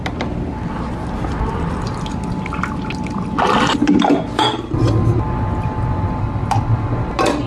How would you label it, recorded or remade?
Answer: recorded